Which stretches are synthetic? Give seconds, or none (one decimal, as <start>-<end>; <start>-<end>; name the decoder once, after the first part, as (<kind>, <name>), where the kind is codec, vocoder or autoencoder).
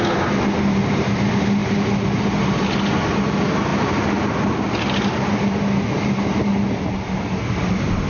none